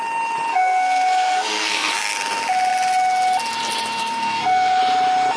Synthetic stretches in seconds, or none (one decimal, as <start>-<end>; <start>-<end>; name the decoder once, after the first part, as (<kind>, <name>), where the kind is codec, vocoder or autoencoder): 0.5-1.9 (codec, SNAC); 4.0-4.8